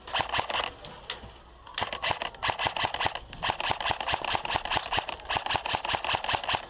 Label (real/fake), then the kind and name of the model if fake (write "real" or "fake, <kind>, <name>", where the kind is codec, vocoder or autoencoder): real